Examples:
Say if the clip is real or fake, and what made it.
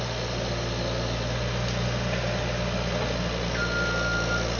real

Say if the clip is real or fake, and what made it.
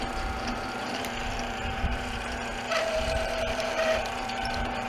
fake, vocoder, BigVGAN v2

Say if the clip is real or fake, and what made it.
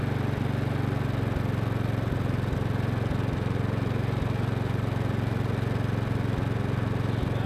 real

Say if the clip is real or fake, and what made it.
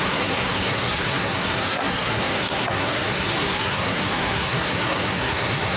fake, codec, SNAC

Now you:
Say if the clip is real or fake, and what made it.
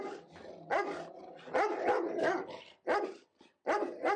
real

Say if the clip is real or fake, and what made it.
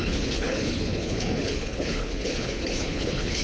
fake, codec, HILCodec